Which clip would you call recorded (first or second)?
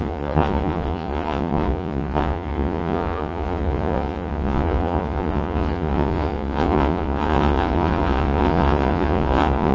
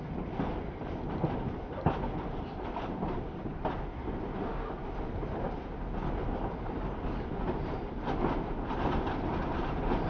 second